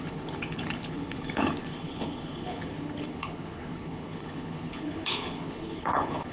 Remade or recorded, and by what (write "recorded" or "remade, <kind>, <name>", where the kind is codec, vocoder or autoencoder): remade, codec, HILCodec